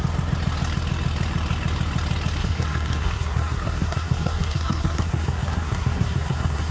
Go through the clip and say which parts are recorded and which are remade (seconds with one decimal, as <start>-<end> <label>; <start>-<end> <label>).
0.0-2.4 recorded; 2.4-6.7 remade